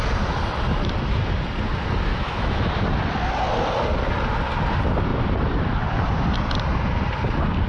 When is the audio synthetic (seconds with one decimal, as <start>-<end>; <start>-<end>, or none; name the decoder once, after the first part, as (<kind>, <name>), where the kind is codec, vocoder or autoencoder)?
2.1-2.7 (autoencoder, DAC-VAE)

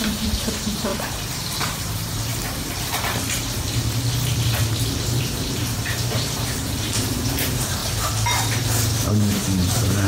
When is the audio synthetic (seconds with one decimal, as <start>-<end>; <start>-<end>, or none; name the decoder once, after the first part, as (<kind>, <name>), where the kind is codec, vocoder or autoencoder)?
0.0-2.3 (vocoder, BigVGAN v2); 5.2-7.8; 9.1-10.1

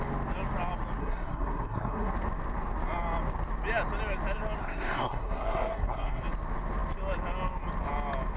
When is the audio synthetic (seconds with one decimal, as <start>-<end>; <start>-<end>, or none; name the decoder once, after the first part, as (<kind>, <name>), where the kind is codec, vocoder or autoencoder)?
1.0-2.1 (codec, SNAC); 4.6-6.2

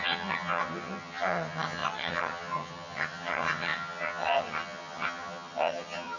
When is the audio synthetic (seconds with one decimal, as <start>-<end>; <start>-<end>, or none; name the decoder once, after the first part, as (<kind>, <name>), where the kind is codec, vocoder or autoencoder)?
0.0-6.2 (vocoder, HiFi-GAN)

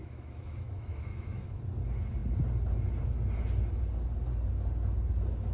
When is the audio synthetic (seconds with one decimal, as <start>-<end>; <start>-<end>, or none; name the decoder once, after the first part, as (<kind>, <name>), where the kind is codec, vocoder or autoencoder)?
0.0-1.6 (autoencoder, DAC-VAE)

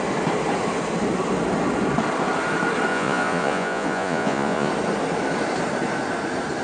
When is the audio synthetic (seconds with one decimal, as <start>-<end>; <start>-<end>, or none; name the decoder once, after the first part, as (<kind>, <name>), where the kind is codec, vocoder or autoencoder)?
2.9-4.7 (vocoder, Vocos)

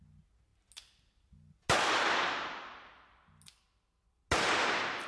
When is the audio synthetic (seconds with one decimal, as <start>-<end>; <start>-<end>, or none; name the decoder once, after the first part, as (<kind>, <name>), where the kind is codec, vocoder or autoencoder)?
none

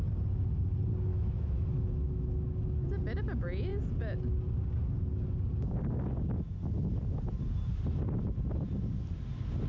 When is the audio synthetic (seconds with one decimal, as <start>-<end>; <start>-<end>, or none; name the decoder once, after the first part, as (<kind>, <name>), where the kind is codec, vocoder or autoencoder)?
1.1-2.9 (autoencoder, DAC-VAE)